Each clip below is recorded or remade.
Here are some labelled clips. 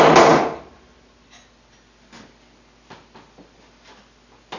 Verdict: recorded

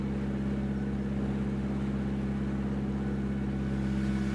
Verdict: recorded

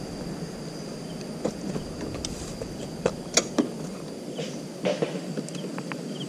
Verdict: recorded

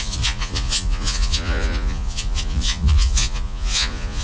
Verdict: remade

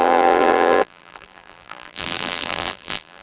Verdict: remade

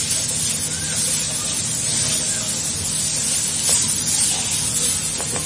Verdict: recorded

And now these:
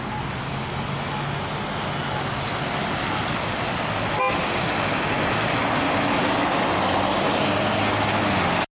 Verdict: recorded